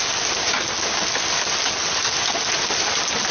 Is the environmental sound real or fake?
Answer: real